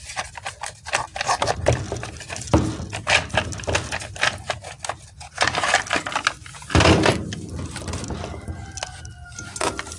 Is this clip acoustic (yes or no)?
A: yes